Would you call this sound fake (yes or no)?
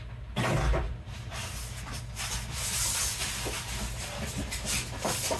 no